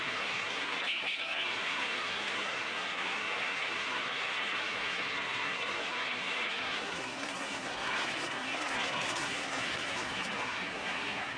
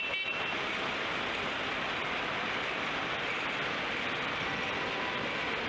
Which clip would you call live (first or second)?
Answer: second